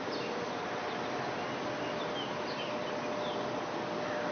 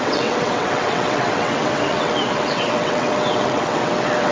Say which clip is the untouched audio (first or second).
first